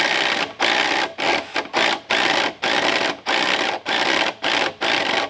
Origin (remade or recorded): recorded